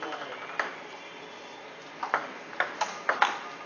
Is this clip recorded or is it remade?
recorded